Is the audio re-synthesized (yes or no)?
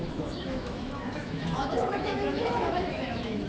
yes